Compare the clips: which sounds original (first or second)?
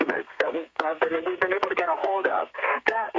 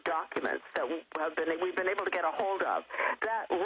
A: second